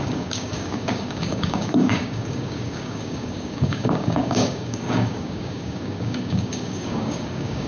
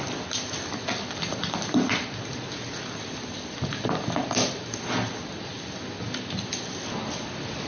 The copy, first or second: first